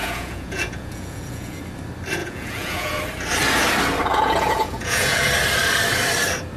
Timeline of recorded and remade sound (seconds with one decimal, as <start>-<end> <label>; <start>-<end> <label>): 0.0-1.6 remade; 1.6-2.2 recorded; 2.2-3.0 remade; 3.0-4.1 recorded; 4.1-5.3 remade; 5.3-6.6 recorded

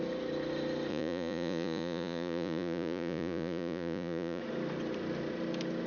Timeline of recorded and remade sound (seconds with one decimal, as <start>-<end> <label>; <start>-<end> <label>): 0.0-0.9 recorded; 0.9-4.4 remade; 4.4-5.9 recorded